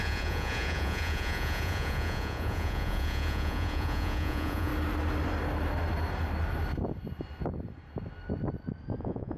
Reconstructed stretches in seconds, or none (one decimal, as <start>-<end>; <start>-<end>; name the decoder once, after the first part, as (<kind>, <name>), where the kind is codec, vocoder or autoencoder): 0.0-4.7 (vocoder, Vocos); 9.0-9.4